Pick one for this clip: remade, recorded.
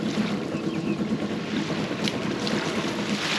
recorded